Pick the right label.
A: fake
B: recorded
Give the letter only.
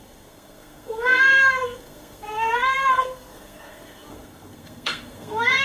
A